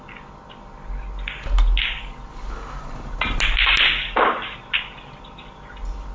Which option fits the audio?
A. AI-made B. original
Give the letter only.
B